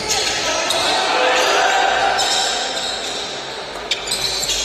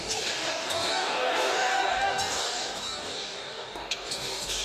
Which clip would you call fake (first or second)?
second